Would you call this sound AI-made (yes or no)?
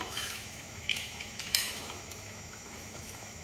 yes